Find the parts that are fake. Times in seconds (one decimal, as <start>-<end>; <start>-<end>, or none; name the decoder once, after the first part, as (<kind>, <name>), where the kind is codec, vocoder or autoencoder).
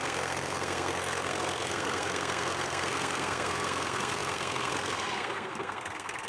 0.0-6.3 (codec, SNAC)